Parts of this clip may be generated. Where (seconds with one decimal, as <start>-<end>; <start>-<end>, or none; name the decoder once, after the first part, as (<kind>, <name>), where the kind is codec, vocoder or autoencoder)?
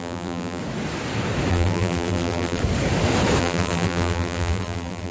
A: 0.0-0.6 (vocoder, BigVGAN v2); 1.5-2.6; 3.4-5.1